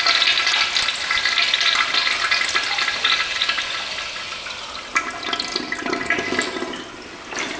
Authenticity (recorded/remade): recorded